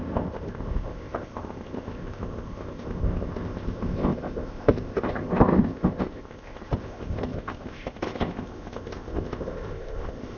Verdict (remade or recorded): remade